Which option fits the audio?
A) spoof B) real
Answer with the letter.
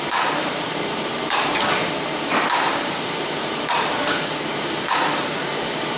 A